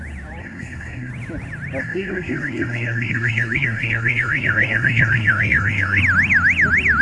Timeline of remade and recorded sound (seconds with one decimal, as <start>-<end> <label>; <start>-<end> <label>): 0.0-0.4 recorded; 0.4-1.1 remade; 1.1-1.8 recorded; 1.8-6.0 remade; 6.0-7.0 recorded